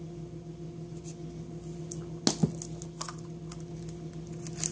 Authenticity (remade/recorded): recorded